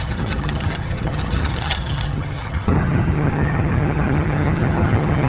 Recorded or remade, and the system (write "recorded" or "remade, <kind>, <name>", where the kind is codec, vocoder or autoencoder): remade, vocoder, HiFi-GAN